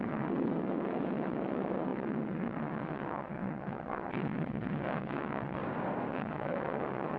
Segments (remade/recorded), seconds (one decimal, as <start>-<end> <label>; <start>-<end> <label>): 0.0-5.6 remade; 5.6-6.1 recorded; 6.1-7.2 remade